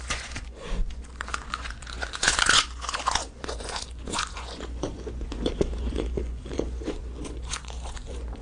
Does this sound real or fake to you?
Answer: fake